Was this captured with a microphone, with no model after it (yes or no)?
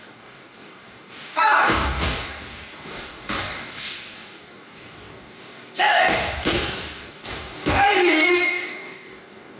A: no